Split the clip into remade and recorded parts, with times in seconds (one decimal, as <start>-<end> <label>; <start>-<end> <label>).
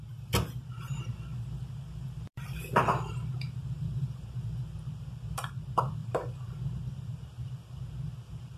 0.0-1.3 recorded; 1.3-4.5 remade; 4.5-6.0 recorded; 6.0-6.6 remade; 6.6-8.6 recorded